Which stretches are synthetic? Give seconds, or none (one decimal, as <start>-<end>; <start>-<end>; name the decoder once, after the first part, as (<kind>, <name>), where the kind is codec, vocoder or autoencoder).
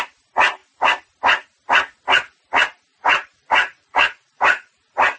2.9-5.2 (vocoder, Vocos)